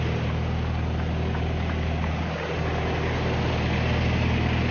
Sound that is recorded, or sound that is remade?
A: recorded